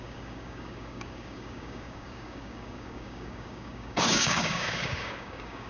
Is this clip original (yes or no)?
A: no